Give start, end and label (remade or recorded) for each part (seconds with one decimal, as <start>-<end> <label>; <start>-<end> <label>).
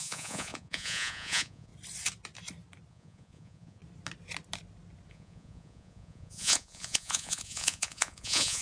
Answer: 0.0-1.7 remade; 1.7-2.9 recorded; 2.9-3.8 remade; 3.8-5.1 recorded; 5.1-8.6 remade